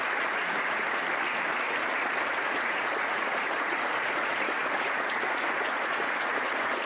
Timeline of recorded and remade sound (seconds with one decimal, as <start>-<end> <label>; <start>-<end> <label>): 0.0-1.0 remade; 1.0-2.4 recorded; 2.4-6.9 remade